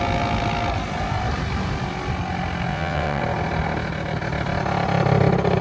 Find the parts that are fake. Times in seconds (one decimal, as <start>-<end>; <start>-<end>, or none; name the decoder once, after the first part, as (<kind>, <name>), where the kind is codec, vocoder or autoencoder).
2.7-3.2 (vocoder, WaveNeXt)